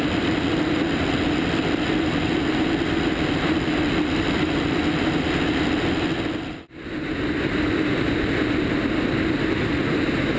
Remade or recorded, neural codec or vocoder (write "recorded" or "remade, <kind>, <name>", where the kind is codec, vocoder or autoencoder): recorded